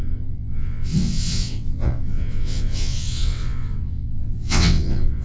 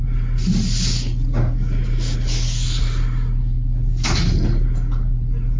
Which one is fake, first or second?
first